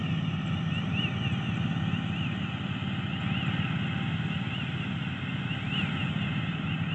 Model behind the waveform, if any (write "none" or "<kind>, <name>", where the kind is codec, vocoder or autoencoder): none